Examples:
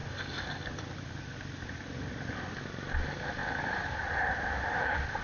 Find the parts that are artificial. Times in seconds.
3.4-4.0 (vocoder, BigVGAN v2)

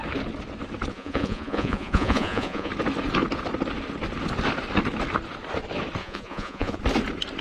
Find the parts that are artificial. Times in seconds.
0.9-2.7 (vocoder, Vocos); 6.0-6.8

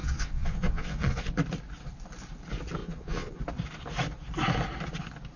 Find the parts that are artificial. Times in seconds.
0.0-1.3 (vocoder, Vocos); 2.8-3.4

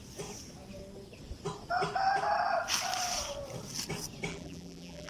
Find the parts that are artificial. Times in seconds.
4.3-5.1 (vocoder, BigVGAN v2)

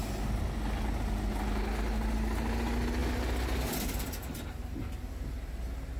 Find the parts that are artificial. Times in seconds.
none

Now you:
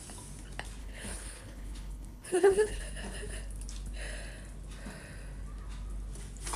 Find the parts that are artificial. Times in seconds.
0.8-2.8 (codec, HILCodec)

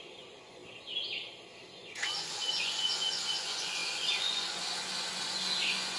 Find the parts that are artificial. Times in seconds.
0.0-0.6 (vocoder, Vocos); 1.7-6.0

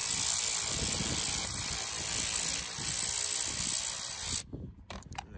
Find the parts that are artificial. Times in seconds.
none